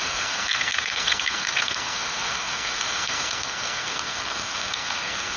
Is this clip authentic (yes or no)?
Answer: no